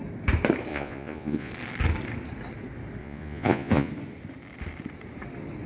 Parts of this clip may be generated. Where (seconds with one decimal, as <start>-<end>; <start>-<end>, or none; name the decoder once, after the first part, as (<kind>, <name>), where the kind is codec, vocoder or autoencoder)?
0.7-1.5 (vocoder, Vocos); 3.0-3.9

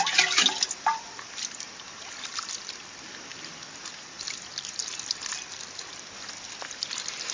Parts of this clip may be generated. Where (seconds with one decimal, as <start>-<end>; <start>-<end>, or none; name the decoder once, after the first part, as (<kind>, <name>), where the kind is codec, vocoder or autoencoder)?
none

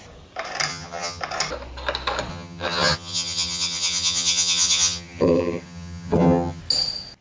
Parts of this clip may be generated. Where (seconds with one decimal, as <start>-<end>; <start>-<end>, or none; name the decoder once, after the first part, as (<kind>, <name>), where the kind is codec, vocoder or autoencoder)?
0.7-1.2 (vocoder, HiFi-GAN); 2.3-6.6

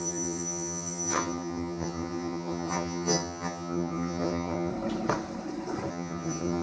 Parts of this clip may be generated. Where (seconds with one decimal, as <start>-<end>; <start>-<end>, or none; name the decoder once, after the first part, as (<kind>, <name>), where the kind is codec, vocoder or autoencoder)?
0.0-4.7 (vocoder, HiFi-GAN); 5.9-6.6